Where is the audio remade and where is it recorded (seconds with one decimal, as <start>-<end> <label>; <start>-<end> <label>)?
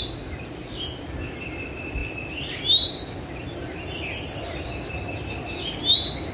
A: 0.0-6.3 recorded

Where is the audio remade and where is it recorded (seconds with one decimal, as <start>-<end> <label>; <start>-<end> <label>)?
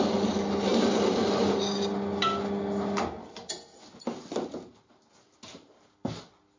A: 0.0-6.6 recorded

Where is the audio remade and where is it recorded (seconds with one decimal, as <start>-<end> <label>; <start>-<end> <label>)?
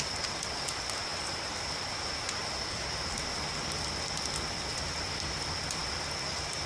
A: 0.0-6.7 recorded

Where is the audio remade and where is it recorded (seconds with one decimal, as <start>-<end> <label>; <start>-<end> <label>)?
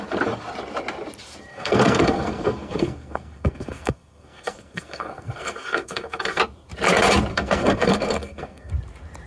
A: 0.0-1.5 recorded; 1.5-6.4 remade; 6.4-7.3 recorded; 7.3-8.7 remade; 8.7-9.3 recorded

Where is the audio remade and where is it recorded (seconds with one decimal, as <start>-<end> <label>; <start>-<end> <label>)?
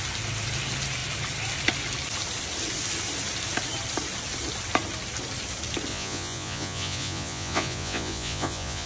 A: 0.0-5.9 recorded; 5.9-8.9 remade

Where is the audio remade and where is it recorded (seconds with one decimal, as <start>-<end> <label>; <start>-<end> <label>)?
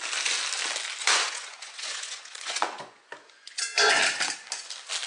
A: 0.0-1.0 recorded; 1.0-4.0 remade; 4.0-5.1 recorded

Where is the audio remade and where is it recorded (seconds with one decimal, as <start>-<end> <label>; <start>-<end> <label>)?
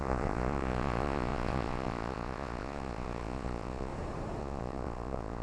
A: 0.0-3.9 remade; 3.9-4.4 recorded; 4.4-5.4 remade